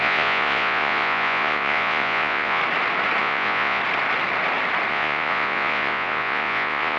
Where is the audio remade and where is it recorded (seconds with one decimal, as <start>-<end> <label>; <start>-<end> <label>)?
0.0-2.6 remade; 2.6-3.2 recorded; 3.2-3.8 remade; 3.8-4.9 recorded; 4.9-7.0 remade